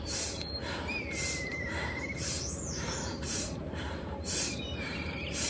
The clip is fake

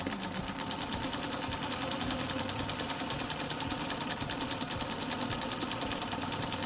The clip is fake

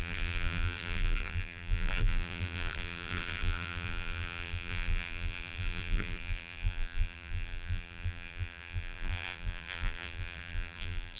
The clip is fake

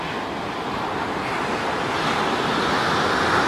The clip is real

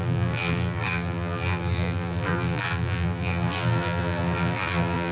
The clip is fake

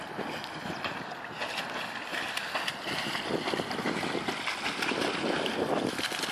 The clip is real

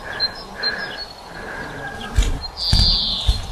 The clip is real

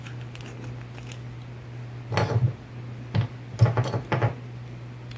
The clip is real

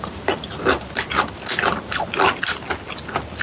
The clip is real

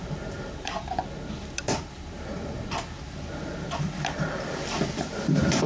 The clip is fake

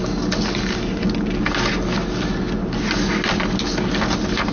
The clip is real